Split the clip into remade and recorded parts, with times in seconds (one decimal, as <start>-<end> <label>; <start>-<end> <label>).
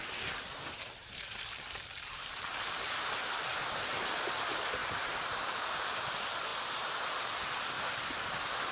0.0-1.4 remade; 1.4-4.8 recorded; 4.8-5.6 remade; 5.6-8.7 recorded